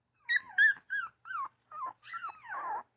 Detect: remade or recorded recorded